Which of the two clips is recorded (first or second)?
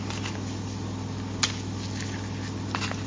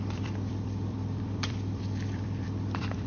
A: first